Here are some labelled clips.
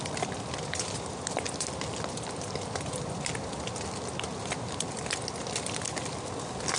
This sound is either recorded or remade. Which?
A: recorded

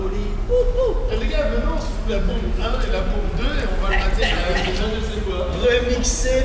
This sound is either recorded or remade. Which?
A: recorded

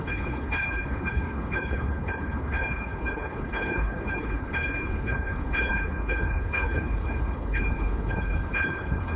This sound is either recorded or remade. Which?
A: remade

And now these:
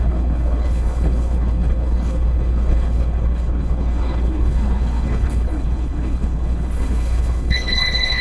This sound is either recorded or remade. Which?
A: remade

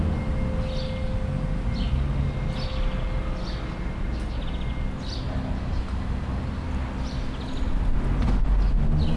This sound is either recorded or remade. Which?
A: recorded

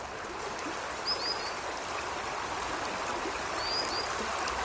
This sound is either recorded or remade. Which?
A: recorded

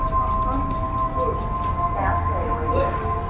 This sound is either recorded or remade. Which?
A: recorded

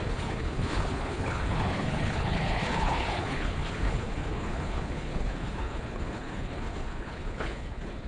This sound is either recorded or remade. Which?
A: remade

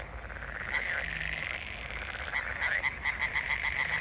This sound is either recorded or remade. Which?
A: recorded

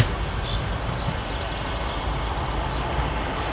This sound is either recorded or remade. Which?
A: recorded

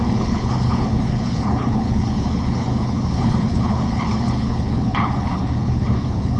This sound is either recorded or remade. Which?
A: remade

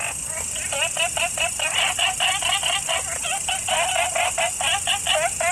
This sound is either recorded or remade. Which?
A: recorded